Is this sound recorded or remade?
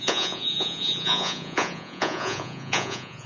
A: remade